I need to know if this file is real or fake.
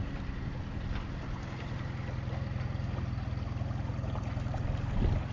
real